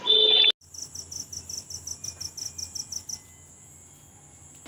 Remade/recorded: recorded